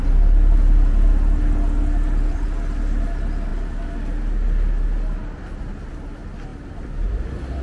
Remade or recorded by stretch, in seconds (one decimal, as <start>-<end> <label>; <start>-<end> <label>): 0.0-7.6 recorded